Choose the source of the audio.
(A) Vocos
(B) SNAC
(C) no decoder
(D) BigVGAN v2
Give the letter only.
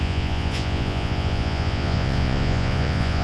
A